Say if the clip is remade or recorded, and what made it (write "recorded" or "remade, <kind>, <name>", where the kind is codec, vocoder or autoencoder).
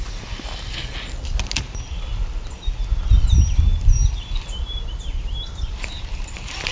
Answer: recorded